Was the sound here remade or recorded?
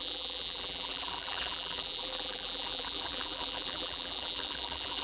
remade